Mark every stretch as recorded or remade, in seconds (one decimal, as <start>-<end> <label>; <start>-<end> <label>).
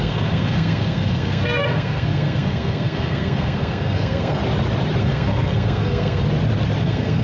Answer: 0.0-4.4 remade; 4.4-5.0 recorded; 5.0-6.2 remade; 6.2-6.8 recorded; 6.8-7.2 remade